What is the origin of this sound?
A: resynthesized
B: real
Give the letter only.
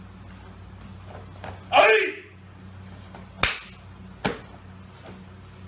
B